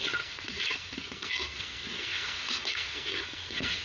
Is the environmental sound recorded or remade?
remade